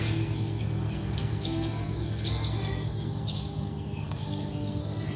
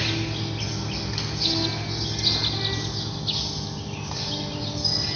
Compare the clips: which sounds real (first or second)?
second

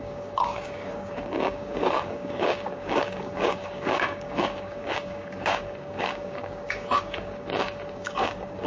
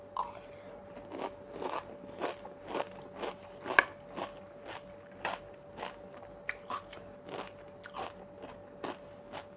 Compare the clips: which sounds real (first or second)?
second